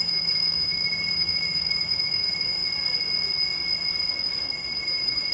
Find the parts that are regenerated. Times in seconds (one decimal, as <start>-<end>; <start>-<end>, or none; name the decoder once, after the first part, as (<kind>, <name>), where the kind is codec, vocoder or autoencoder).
0.0-2.6 (autoencoder, DAC-VAE); 4.4-5.3